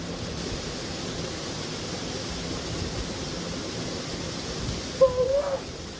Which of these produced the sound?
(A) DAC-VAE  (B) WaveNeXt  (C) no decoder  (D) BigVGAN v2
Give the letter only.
C